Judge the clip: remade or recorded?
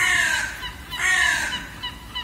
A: recorded